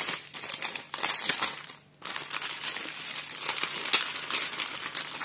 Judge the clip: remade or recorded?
recorded